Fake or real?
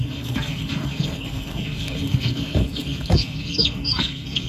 fake